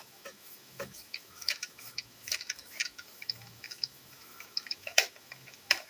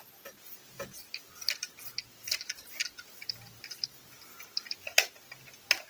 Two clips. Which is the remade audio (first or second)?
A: first